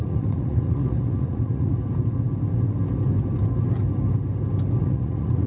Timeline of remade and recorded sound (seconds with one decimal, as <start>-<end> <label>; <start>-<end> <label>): 0.0-1.7 remade; 1.7-4.8 recorded; 4.8-5.5 remade